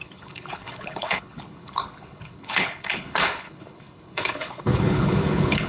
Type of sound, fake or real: fake